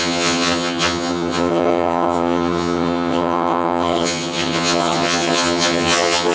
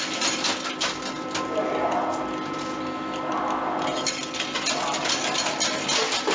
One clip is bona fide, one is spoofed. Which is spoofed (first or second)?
first